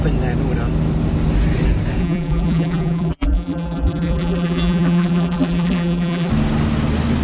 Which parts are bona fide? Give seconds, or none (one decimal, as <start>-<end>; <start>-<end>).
0.0-2.0; 6.3-7.2